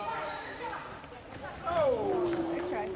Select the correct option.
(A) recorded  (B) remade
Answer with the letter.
B